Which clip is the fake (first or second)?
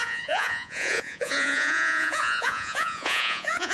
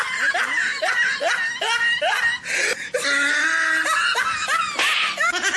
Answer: first